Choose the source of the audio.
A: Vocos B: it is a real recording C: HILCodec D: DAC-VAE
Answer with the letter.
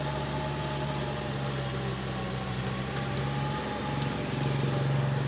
B